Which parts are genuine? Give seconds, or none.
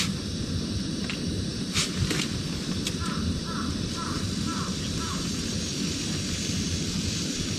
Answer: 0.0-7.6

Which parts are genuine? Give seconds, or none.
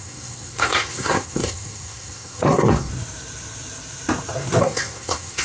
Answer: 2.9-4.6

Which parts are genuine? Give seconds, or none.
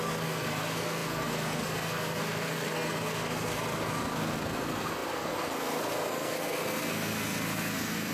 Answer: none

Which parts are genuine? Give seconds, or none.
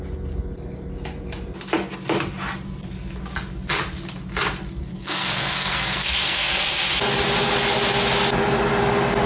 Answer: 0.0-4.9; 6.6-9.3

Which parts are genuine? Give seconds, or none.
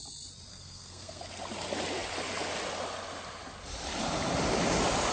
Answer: 0.0-0.5; 1.2-5.1